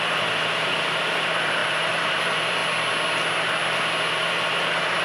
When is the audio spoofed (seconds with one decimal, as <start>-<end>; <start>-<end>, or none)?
0.0-2.6; 4.1-5.0